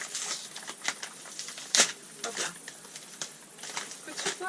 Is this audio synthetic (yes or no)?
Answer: no